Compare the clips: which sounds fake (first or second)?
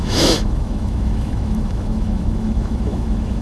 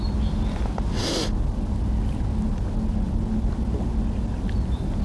first